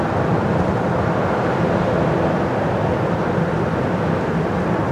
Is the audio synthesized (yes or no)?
no